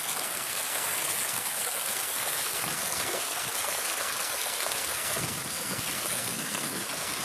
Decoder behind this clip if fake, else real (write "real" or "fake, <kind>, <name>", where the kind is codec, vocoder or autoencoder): fake, codec, SNAC